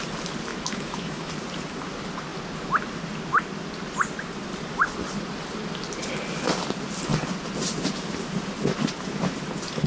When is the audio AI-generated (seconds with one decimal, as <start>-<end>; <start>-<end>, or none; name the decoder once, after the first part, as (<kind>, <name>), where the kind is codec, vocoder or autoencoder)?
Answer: 0.5-1.3 (autoencoder, DAC-VAE)